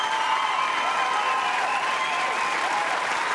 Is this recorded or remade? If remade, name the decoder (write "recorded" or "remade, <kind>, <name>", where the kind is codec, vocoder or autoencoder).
recorded